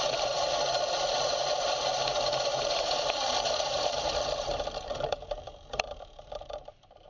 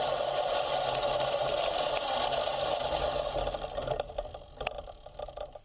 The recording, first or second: second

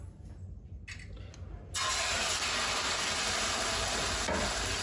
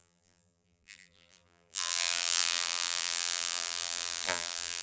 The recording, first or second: first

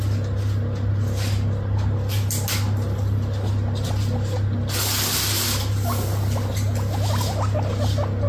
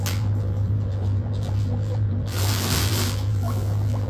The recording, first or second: first